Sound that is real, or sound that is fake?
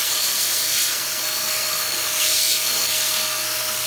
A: fake